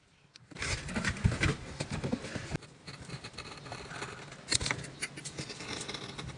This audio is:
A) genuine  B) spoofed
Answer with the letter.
A